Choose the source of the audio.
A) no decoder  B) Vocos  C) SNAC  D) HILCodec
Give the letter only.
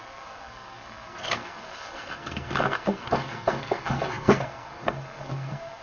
C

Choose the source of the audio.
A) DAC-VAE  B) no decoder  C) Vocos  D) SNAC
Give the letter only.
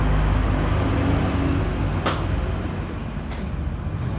B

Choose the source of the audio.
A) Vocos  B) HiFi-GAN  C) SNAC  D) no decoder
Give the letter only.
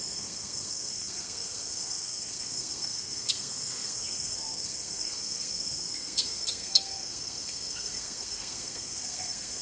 C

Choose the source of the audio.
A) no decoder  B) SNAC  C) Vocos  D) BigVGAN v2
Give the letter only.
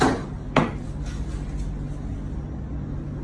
A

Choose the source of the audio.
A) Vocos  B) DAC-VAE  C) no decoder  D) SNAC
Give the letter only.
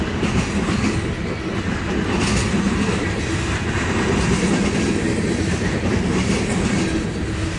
C